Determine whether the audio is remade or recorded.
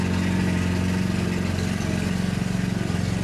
recorded